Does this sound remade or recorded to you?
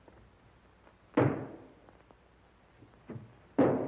recorded